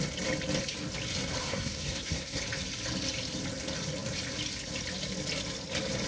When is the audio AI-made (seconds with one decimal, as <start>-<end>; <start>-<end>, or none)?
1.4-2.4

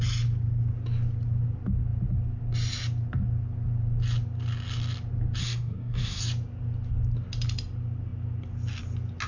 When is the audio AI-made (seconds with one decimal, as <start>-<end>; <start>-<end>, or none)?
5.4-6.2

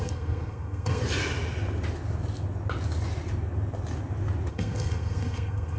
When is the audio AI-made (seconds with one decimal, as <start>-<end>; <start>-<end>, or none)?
0.0-1.0; 4.5-5.8

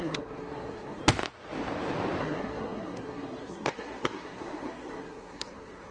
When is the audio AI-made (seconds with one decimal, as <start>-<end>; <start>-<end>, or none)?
0.0-1.0; 2.2-5.9

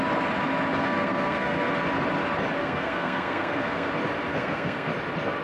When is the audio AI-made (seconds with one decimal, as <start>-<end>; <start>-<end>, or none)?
0.8-1.7; 2.6-3.9; 4.3-4.9